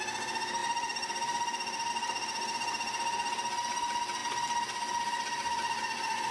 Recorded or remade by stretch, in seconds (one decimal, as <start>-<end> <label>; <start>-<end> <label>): 0.0-0.6 recorded; 0.6-1.9 remade; 1.9-6.3 recorded

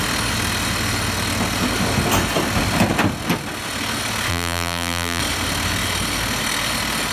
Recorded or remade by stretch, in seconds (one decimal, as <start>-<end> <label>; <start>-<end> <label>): 0.0-4.3 recorded; 4.3-5.2 remade; 5.2-7.1 recorded